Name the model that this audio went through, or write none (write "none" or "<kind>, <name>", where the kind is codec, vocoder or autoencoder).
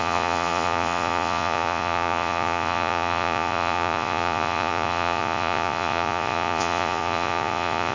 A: vocoder, Vocos